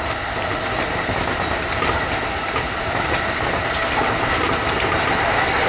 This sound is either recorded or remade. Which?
recorded